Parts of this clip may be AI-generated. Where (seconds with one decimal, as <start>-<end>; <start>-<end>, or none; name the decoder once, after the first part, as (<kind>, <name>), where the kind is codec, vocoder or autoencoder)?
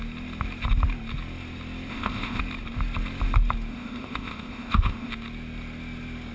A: 1.9-2.4 (codec, ZipCodec); 3.7-5.1